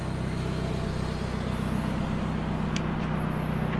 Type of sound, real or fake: real